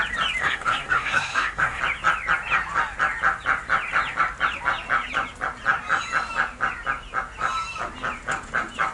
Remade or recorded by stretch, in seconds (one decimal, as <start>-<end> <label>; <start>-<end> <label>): 0.0-0.4 recorded; 0.4-1.8 remade; 1.8-8.9 recorded